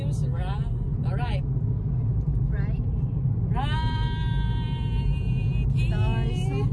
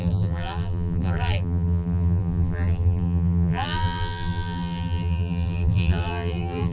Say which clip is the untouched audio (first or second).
first